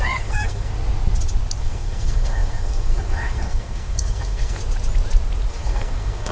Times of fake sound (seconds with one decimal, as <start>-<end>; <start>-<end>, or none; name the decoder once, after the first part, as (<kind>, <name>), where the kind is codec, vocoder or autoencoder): 0.0-0.7 (codec, SNAC); 1.6-4.6; 5.5-6.3